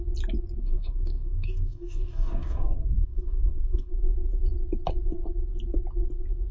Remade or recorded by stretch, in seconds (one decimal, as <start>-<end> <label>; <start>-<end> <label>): 0.0-0.6 recorded; 0.6-3.9 remade; 3.9-6.5 recorded